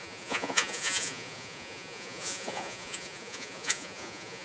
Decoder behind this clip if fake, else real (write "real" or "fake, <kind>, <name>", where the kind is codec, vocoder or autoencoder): fake, vocoder, Vocos